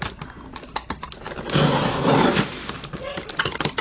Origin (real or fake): real